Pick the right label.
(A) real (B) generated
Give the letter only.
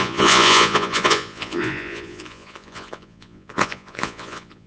B